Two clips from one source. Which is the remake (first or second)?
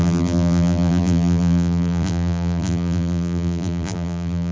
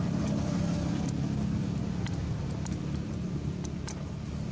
first